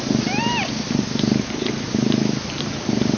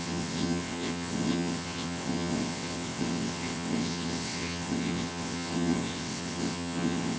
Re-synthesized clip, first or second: second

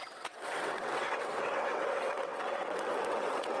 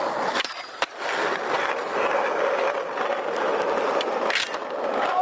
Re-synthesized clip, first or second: first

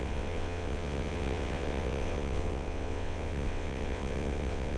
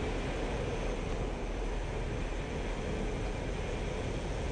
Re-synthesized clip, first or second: first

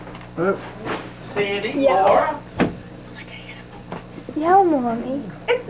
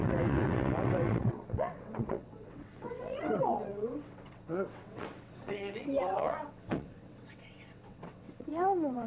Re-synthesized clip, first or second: second